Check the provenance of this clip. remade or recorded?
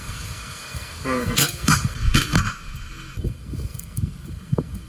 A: remade